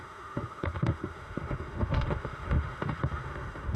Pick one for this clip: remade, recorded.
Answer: remade